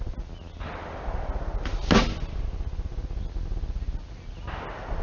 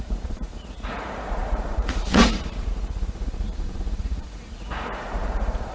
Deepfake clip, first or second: second